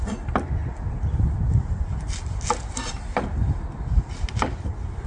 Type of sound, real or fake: real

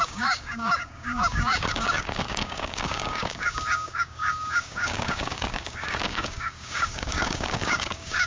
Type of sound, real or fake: fake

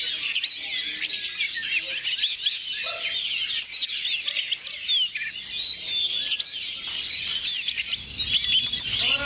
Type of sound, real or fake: real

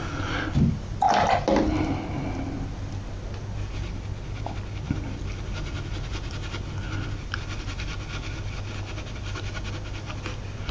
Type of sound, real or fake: real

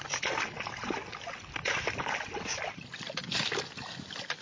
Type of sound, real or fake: real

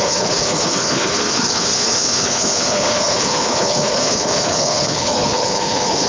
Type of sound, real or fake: fake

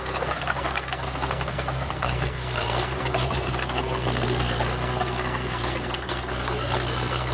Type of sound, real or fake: fake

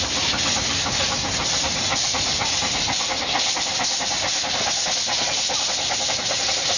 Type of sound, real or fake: real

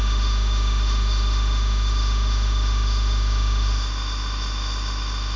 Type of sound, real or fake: fake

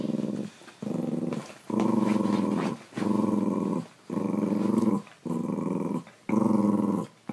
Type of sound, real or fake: real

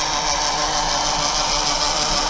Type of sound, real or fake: real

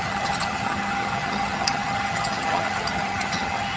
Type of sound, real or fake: fake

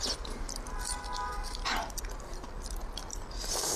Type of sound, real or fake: real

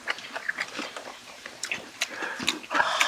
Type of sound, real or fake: real